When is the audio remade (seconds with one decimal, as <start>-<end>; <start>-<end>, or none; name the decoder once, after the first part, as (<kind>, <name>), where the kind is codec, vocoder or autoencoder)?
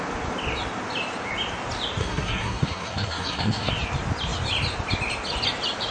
2.0-3.7 (codec, SNAC)